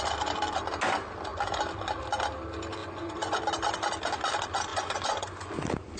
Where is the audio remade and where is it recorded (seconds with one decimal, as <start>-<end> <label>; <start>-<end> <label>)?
0.0-2.8 recorded; 2.8-3.4 remade; 3.4-4.7 recorded; 4.7-5.5 remade; 5.5-6.0 recorded